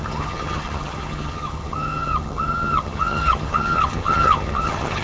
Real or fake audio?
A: fake